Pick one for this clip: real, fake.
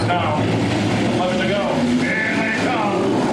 real